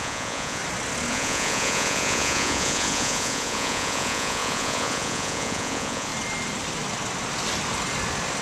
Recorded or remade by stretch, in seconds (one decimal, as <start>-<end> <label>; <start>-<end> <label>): 0.0-0.6 remade; 0.6-1.1 recorded; 1.1-6.1 remade; 6.1-8.4 recorded